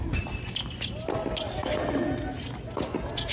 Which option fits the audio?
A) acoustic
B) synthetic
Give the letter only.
A